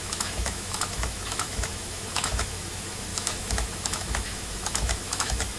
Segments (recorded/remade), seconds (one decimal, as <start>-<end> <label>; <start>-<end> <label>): 0.0-5.6 remade